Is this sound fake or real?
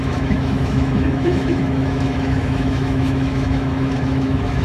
fake